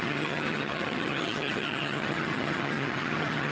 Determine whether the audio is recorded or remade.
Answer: remade